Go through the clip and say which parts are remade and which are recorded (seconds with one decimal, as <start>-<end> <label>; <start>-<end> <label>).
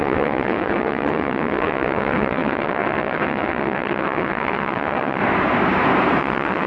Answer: 0.0-5.2 remade; 5.2-6.2 recorded; 6.2-6.7 remade